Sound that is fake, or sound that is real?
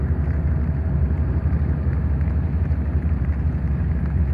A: fake